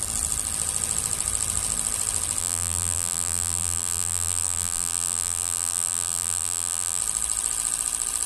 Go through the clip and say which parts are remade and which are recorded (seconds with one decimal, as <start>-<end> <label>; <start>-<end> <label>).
0.0-2.4 recorded; 2.4-7.0 remade; 7.0-8.3 recorded